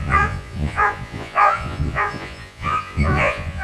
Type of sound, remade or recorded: remade